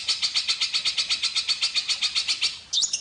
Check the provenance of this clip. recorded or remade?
recorded